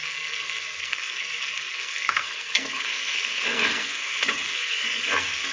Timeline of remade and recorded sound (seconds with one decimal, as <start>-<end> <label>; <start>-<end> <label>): 0.0-5.5 remade